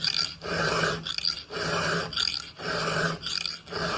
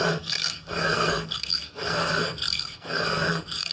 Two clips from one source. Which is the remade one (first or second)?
second